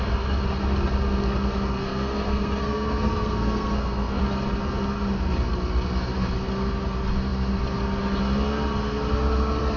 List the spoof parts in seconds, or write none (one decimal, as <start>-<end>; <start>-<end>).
1.8-4.2